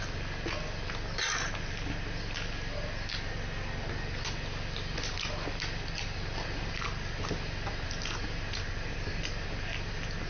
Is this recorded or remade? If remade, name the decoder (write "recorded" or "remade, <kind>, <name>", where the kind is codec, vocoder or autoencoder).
recorded